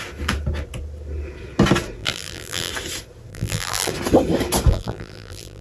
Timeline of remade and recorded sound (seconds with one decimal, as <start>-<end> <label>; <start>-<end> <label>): 0.0-2.0 recorded; 2.0-2.7 remade; 2.7-3.3 recorded; 3.3-3.9 remade; 3.9-4.7 recorded; 4.7-5.6 remade

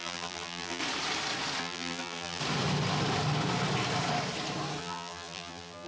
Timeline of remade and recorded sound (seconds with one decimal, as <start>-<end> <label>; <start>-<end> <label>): 0.0-0.8 remade; 0.8-1.6 recorded; 1.6-2.4 remade; 2.4-4.8 recorded; 4.8-5.9 remade

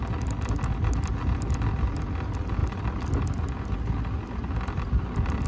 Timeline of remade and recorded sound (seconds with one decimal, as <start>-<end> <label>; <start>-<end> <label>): 0.0-5.5 recorded